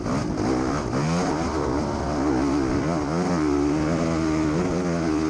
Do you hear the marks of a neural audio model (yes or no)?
no